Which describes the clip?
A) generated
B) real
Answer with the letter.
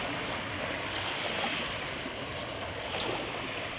B